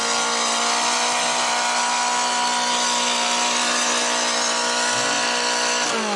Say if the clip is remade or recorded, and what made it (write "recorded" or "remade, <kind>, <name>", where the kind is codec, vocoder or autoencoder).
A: recorded